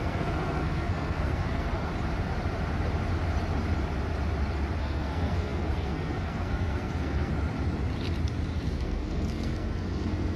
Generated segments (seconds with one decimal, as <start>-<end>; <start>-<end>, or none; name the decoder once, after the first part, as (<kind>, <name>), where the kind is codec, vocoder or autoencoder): 0.0-1.9 (codec, SNAC); 4.8-7.3; 8.6-10.4